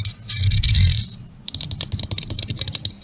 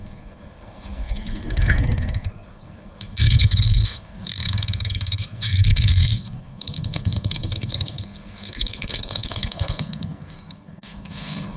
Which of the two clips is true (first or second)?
first